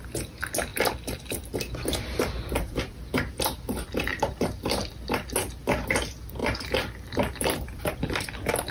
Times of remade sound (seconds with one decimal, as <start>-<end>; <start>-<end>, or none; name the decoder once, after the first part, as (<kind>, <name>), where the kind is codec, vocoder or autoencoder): 4.1-4.6 (vocoder, BigVGAN v2); 6.4-7.8